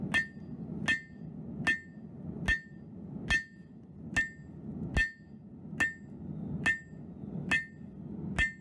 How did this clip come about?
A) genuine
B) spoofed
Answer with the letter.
A